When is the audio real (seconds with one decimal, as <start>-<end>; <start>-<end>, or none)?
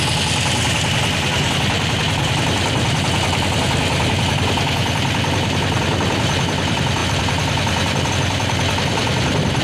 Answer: 0.0-9.6